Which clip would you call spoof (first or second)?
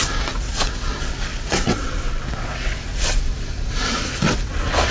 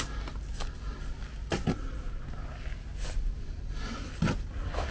first